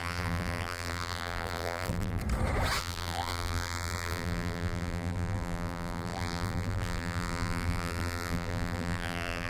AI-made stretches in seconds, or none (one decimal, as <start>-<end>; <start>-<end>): 0.0-2.2; 2.8-9.5